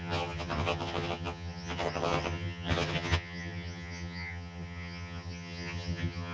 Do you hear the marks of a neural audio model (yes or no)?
yes